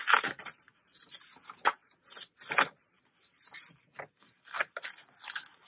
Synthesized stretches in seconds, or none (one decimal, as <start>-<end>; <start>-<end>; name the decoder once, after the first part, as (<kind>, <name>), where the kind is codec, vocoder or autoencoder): 0.0-0.6 (vocoder, BigVGAN v2); 1.8-5.2